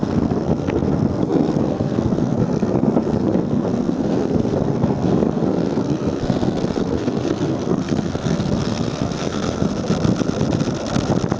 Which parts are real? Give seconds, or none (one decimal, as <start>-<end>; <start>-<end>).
9.7-11.4